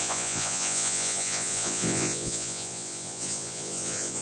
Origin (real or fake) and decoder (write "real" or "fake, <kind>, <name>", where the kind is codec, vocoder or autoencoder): fake, vocoder, Vocos